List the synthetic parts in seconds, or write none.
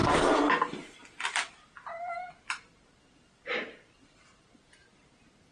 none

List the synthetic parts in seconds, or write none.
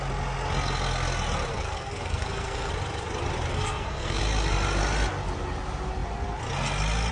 1.5-2.7; 3.5-4.2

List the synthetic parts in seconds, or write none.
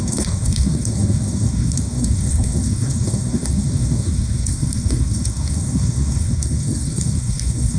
0.0-7.8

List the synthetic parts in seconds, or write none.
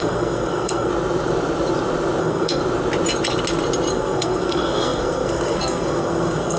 0.0-0.9; 2.2-2.6; 3.9-6.6